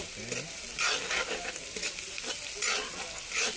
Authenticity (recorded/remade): recorded